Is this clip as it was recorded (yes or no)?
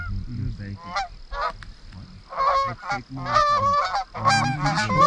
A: yes